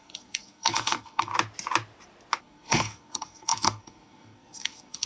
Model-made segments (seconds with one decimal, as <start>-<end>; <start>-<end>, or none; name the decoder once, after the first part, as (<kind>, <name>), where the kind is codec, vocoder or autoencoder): 0.0-1.3 (codec, SNAC); 2.4-5.1